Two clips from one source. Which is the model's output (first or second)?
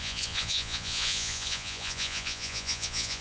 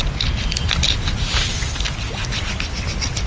first